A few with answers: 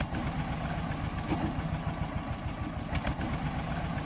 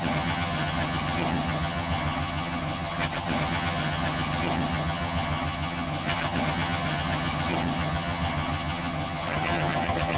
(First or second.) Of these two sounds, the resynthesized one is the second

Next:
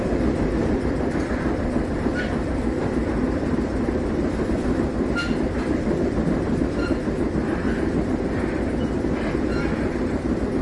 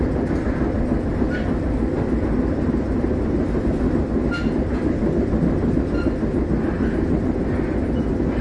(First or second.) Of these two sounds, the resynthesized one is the first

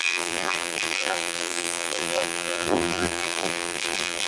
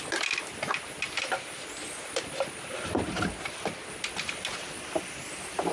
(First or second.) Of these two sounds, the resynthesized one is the first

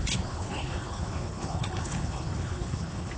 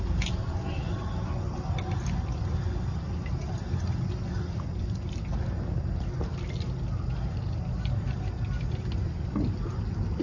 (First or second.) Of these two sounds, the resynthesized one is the first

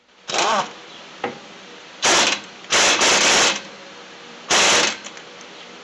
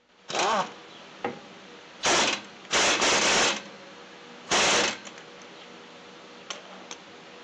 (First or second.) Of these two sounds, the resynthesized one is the first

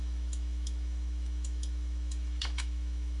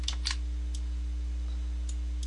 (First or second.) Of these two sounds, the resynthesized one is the first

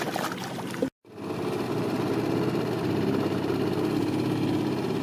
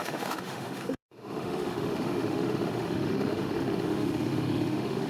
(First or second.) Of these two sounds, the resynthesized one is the second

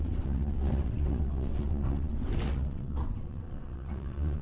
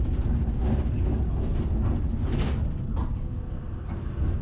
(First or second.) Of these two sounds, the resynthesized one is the first